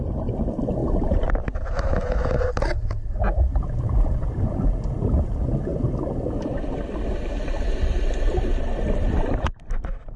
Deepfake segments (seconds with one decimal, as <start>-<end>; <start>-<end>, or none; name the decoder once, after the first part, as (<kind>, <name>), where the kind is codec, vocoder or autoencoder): 0.8-2.4 (vocoder, BigVGAN v2)